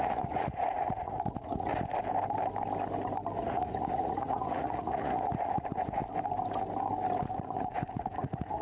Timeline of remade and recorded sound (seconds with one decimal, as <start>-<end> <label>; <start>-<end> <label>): 0.0-1.7 remade; 1.7-3.4 recorded; 3.4-6.0 remade; 6.0-7.4 recorded; 7.4-8.6 remade

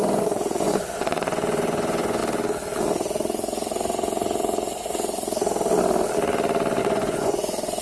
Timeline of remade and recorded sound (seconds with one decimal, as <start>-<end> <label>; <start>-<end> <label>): 0.0-2.2 remade; 2.2-6.8 recorded; 6.8-7.8 remade

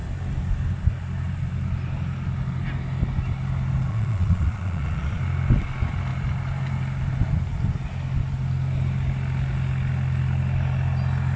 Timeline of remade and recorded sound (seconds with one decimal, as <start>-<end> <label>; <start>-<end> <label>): 0.0-3.9 recorded; 3.9-5.2 remade; 5.2-11.4 recorded

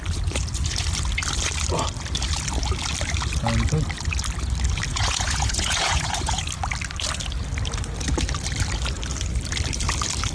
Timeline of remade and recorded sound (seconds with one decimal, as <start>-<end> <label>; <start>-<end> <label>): 0.0-4.9 recorded; 4.9-6.4 remade; 6.4-10.3 recorded